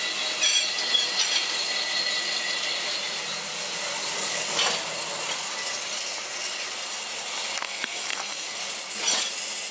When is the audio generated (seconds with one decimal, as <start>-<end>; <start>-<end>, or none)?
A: 7.6-8.6